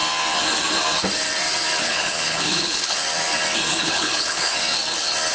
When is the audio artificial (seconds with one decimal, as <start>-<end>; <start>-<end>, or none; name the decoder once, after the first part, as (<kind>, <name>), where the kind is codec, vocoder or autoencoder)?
1.8-3.0 (codec, HILCodec); 3.7-4.5